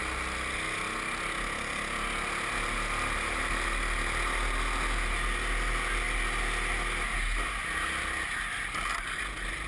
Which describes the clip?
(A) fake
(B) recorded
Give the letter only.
B